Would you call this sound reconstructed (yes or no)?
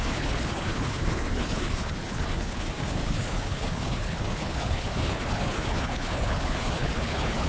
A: yes